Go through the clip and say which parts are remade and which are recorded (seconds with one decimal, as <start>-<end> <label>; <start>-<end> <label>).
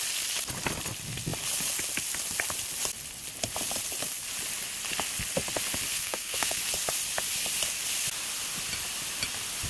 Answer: 0.0-5.9 recorded; 5.9-6.6 remade; 6.6-9.7 recorded